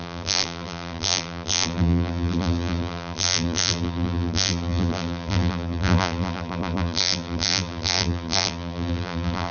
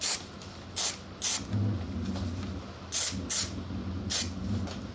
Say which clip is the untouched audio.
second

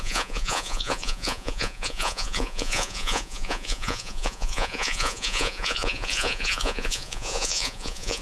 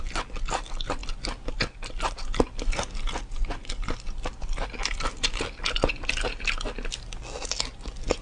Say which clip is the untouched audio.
second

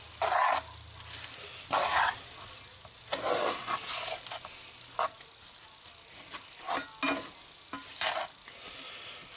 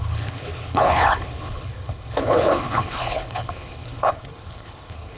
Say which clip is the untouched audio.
first